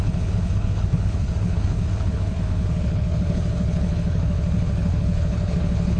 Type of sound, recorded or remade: remade